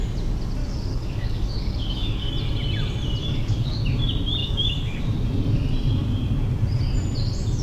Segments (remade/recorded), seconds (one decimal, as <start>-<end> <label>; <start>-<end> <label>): 0.0-0.6 recorded; 0.6-2.3 remade; 2.3-3.2 recorded; 3.2-3.8 remade; 3.8-4.4 recorded; 4.4-5.0 remade; 5.0-7.6 recorded